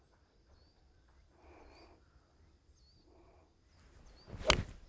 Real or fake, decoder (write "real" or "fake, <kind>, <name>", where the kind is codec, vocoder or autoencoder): real